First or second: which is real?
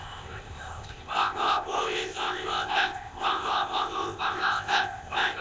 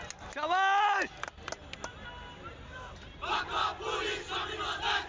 second